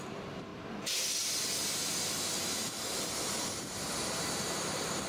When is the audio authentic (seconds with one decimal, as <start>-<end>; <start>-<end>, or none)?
0.5-3.6